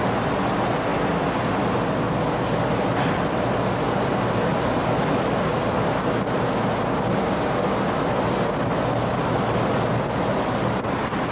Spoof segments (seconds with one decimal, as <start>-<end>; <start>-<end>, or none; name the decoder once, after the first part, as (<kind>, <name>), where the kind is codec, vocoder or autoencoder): none